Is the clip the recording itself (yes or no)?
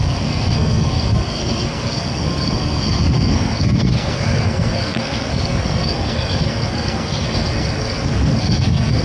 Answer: no